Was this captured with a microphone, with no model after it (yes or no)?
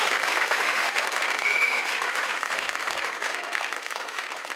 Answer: no